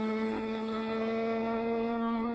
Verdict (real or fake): fake